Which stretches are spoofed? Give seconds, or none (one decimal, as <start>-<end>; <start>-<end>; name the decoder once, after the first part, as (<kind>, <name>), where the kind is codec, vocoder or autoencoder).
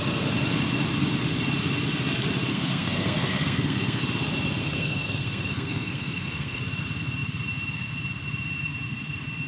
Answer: 2.5-4.0 (codec, SNAC); 4.6-6.6